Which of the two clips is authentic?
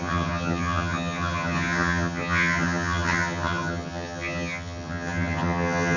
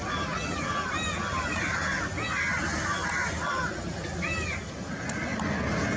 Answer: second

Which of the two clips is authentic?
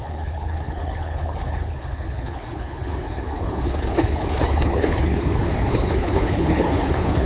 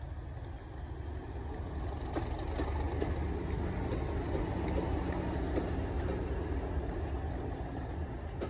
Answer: second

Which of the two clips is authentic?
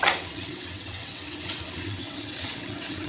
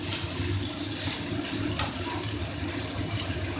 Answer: second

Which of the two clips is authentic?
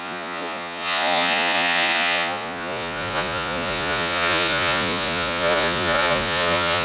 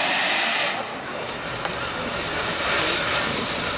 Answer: second